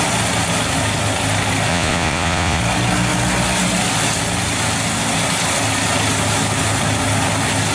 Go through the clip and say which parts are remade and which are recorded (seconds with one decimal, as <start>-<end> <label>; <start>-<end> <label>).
0.0-1.7 recorded; 1.7-2.6 remade; 2.6-7.7 recorded